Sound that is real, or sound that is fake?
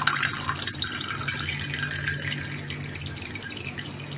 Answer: real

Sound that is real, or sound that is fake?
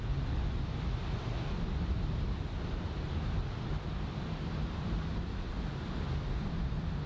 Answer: real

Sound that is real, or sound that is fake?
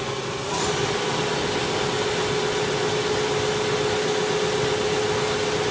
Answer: real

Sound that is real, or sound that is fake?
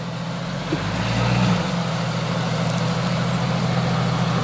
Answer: real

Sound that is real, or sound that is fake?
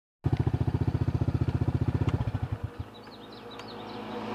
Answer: real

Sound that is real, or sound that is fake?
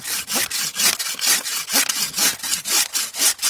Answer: real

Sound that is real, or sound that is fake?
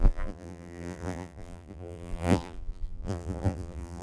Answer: fake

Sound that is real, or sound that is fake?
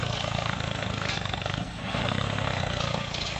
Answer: fake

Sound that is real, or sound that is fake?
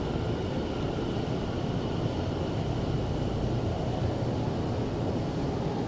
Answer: real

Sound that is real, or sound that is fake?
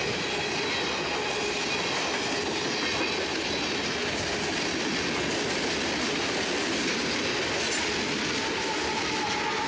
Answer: real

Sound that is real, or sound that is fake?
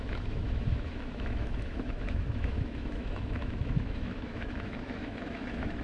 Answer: fake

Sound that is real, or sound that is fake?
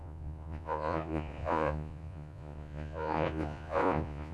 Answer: fake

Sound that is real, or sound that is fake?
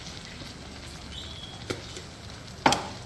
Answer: real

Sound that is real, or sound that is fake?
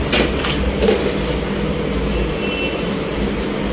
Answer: real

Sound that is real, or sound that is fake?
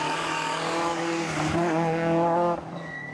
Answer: fake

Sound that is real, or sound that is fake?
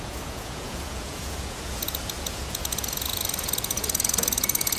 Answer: fake